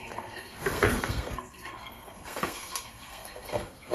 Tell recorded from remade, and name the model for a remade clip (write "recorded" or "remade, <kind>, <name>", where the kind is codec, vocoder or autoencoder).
remade, codec, SNAC